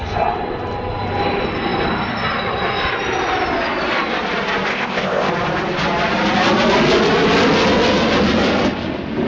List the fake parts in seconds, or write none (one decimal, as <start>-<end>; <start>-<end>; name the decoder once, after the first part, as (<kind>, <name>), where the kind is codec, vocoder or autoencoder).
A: 4.7-5.3 (codec, ZipCodec)